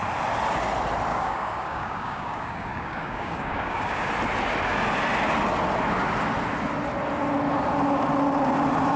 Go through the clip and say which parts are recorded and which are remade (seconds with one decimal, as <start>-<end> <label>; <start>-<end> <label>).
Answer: 0.0-1.1 recorded; 1.1-4.1 remade; 4.1-9.0 recorded